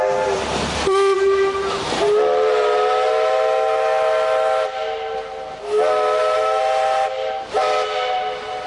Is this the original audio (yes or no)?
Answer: yes